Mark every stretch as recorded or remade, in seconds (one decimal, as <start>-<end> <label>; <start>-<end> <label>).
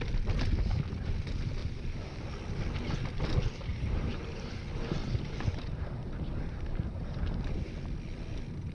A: 0.0-1.6 recorded; 1.6-2.2 remade; 2.2-3.7 recorded; 3.7-4.6 remade; 4.6-5.0 recorded; 5.0-7.6 remade; 7.6-8.7 recorded